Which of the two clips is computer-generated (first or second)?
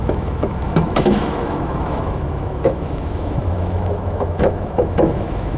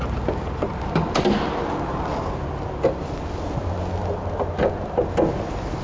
first